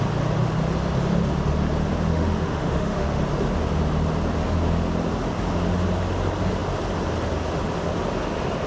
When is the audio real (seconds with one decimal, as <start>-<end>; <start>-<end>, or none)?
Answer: 0.0-2.1; 3.2-8.7